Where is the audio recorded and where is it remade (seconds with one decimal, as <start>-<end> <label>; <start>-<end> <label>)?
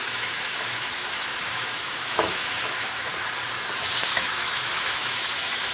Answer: 0.0-3.1 remade; 3.1-4.1 recorded; 4.1-5.7 remade